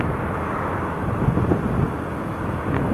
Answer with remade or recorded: recorded